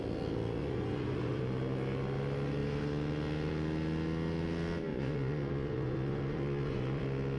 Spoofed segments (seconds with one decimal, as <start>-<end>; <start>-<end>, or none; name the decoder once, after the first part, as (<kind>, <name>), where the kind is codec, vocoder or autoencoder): 0.6-1.4 (vocoder, Vocos); 4.9-7.0